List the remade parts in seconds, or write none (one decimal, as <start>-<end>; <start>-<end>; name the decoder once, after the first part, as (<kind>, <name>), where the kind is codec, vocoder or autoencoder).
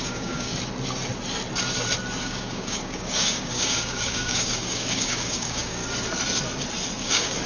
0.0-0.5 (codec, DAC); 2.2-5.8; 7.0-7.5